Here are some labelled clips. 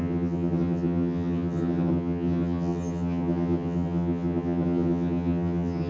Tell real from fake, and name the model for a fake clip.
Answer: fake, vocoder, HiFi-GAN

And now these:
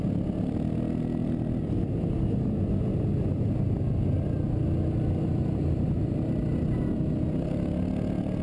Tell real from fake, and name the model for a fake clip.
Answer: real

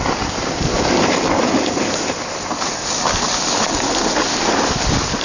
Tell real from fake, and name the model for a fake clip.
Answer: real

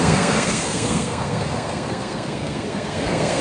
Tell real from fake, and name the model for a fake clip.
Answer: fake, codec, SNAC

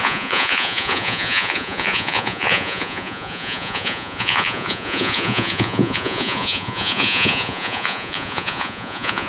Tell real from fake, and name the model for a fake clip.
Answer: fake, vocoder, Vocos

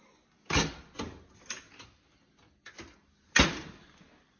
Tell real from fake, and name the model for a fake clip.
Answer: real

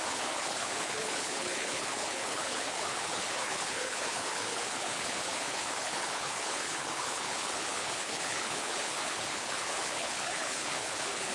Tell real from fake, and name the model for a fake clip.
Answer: fake, codec, HILCodec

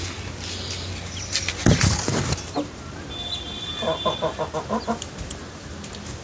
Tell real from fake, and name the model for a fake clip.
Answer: real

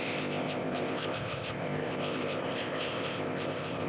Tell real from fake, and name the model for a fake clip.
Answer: fake, codec, ZipCodec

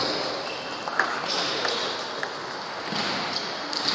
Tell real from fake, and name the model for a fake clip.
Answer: real